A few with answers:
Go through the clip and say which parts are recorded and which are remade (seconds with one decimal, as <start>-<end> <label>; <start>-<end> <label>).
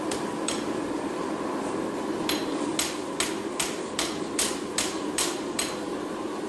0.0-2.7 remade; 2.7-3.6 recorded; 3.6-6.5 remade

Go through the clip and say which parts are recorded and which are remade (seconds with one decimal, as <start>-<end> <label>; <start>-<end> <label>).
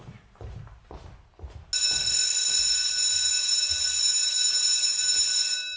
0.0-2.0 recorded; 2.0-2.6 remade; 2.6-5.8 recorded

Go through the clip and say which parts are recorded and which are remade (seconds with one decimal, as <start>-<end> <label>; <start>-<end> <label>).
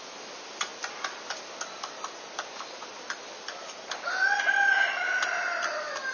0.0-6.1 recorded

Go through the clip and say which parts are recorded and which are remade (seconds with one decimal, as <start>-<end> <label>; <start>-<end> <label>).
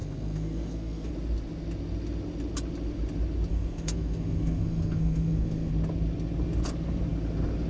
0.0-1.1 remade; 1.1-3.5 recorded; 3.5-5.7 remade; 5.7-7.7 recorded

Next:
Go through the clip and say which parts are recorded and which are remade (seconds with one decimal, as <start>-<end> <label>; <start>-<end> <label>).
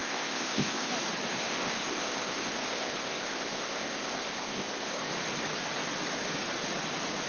0.0-0.9 remade; 0.9-1.4 recorded; 1.4-5.1 remade; 5.1-7.3 recorded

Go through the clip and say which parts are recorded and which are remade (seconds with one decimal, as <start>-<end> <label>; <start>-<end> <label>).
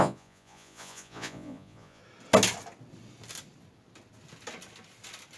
0.0-2.0 remade; 2.0-5.4 recorded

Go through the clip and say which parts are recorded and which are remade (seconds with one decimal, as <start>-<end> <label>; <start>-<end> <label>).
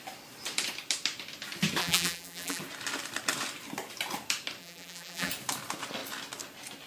0.0-1.8 recorded; 1.8-2.6 remade; 2.6-4.6 recorded; 4.6-5.3 remade; 5.3-6.9 recorded